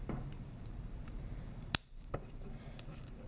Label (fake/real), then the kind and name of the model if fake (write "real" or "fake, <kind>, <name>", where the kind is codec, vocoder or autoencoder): fake, vocoder, BigVGAN v2